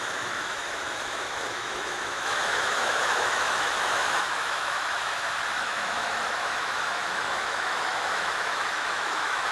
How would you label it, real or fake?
fake